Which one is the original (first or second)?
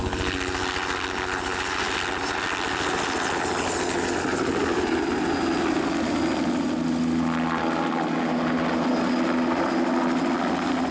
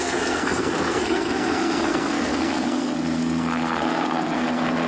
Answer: first